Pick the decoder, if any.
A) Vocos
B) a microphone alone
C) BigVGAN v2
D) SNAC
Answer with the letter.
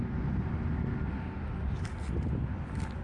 B